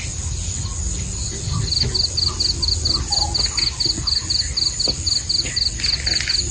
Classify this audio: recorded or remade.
recorded